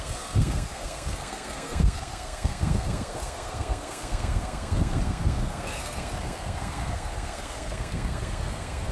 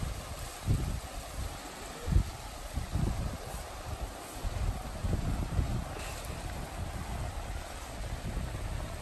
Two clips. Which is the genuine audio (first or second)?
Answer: second